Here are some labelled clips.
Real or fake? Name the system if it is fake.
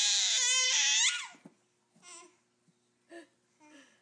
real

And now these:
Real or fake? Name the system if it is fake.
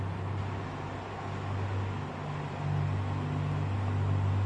real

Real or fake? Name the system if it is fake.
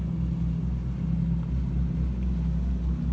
real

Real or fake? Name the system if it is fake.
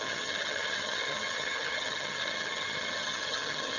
fake, vocoder, HiFi-GAN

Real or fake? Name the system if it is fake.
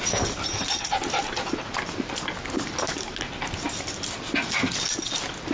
real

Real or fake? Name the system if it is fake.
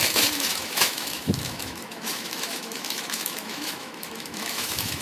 fake, autoencoder, DAC-VAE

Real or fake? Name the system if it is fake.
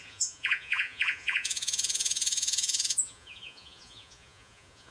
fake, vocoder, Vocos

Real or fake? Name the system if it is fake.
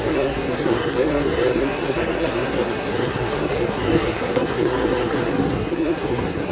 fake, codec, SNAC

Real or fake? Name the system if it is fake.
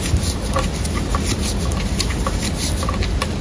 real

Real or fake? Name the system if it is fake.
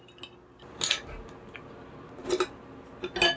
real